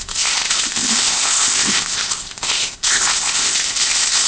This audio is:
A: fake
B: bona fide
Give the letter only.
A